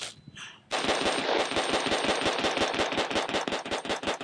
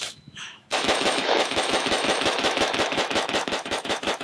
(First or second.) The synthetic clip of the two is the second